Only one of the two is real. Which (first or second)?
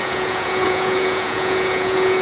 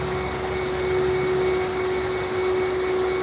second